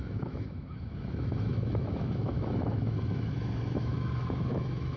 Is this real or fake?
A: fake